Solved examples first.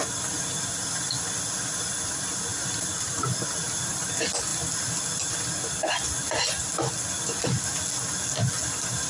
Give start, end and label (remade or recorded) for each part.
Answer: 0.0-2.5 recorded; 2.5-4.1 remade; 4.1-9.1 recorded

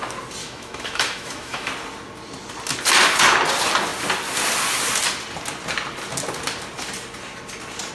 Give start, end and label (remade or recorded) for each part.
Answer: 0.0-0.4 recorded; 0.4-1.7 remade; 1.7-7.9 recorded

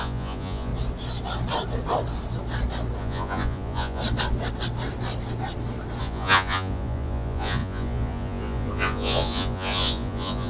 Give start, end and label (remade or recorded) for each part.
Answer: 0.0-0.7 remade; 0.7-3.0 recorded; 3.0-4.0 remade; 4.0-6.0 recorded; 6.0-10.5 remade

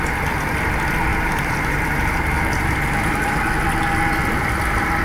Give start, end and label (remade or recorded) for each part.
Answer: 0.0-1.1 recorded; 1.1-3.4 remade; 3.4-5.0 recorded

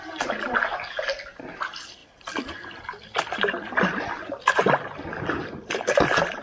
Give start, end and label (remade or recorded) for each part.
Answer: 0.0-6.4 recorded